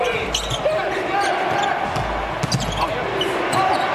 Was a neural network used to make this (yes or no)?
no